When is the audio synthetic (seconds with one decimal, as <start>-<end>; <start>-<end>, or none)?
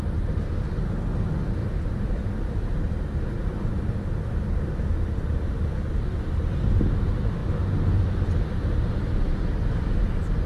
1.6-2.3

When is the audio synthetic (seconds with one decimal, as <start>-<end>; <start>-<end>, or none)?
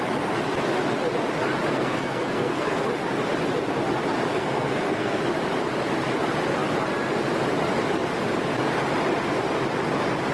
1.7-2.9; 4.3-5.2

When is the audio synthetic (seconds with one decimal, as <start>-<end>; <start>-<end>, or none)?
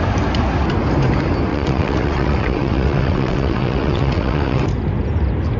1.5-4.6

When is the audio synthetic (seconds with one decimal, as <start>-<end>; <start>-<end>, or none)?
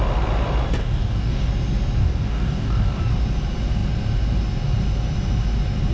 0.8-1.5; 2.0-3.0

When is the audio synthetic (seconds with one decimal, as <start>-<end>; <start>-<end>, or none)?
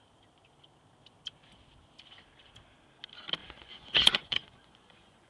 3.4-5.3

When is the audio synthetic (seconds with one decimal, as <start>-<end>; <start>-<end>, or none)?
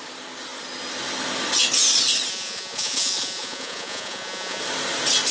2.3-4.6